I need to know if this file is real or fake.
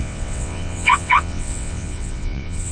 fake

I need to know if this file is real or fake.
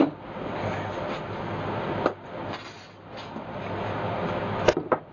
real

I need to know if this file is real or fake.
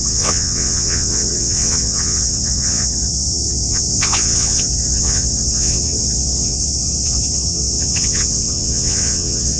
fake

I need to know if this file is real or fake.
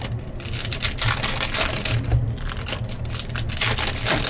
real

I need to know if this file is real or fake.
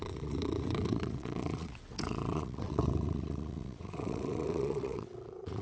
fake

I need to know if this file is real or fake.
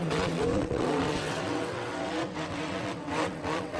fake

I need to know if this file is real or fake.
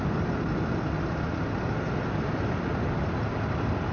real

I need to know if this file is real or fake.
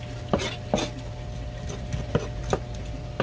real